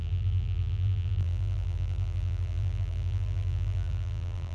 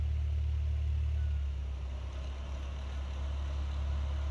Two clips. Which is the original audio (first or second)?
second